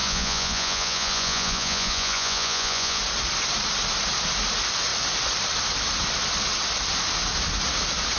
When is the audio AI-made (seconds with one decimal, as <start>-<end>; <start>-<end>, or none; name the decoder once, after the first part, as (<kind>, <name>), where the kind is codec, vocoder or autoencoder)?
0.0-3.0 (vocoder, Vocos)